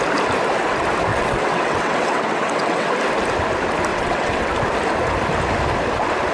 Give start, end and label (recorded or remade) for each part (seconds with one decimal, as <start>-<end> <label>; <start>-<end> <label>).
0.0-1.1 recorded; 1.1-2.9 remade; 2.9-3.9 recorded; 3.9-4.5 remade; 4.5-6.3 recorded